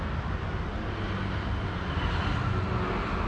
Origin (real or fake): real